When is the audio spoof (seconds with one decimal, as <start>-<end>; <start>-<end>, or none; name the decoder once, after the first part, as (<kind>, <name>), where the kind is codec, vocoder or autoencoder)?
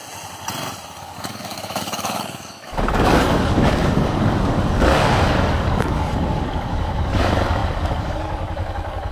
1.0-9.1 (codec, DAC)